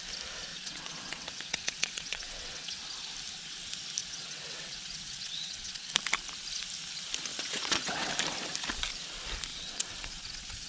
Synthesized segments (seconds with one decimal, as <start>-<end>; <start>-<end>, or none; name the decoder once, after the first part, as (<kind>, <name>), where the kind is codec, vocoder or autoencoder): 0.5-2.8 (vocoder, WaveNeXt); 4.0-5.9; 7.3-8.1; 9.5-10.7